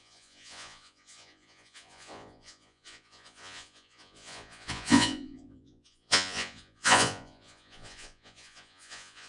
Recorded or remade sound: remade